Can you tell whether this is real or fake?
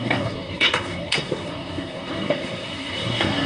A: fake